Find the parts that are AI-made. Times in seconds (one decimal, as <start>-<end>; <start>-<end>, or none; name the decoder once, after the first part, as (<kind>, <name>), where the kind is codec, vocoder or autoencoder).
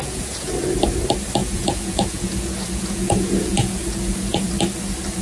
0.0-0.5 (vocoder, Vocos); 1.4-4.5